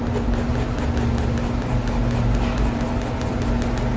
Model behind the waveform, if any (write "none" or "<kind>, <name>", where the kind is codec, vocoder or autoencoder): none